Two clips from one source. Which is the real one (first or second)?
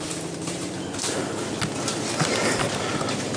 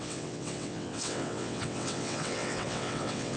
first